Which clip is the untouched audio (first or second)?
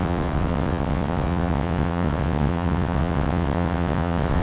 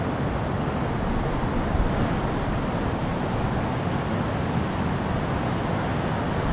second